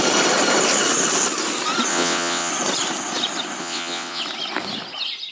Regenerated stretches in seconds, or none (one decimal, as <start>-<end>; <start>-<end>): 1.9-2.5; 3.6-4.2